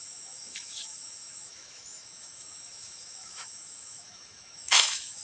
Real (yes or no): no